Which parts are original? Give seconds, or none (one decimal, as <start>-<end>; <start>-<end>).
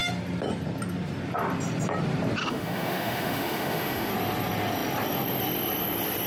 0.0-2.4; 4.1-6.3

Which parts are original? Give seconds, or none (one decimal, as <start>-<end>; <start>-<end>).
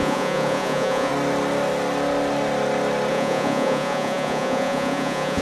1.1-3.1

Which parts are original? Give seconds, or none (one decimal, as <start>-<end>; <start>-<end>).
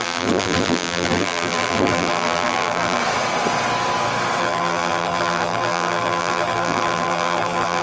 3.0-4.4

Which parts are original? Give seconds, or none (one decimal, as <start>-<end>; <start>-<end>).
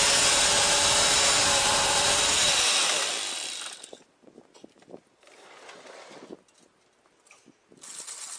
0.0-1.4; 2.7-8.4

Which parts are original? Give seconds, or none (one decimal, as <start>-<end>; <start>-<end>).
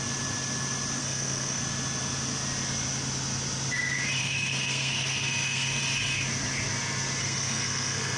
0.0-1.0; 1.6-4.2; 5.8-7.2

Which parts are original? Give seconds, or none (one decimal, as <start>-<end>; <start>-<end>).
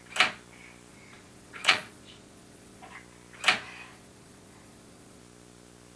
0.0-0.9; 2.9-3.9; 5.2-6.0